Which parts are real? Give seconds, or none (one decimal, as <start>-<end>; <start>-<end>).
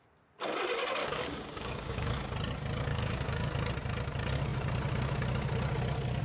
0.0-1.0; 2.1-2.9; 3.5-6.2